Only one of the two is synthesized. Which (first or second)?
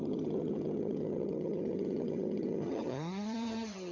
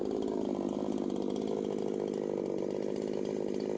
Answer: first